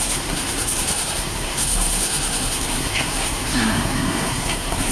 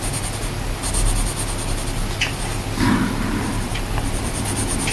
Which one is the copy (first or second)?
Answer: first